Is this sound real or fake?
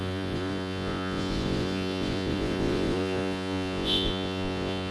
fake